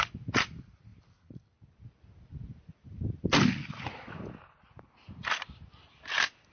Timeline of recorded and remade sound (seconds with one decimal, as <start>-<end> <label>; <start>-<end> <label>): 0.0-6.5 recorded